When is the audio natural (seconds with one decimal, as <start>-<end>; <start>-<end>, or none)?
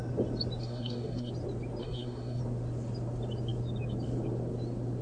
0.0-0.6; 1.3-1.8; 2.4-5.0